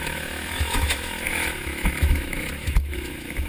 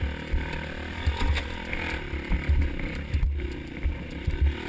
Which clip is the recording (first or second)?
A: second